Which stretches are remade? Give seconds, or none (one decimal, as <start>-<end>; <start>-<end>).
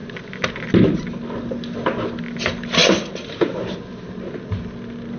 2.8-4.3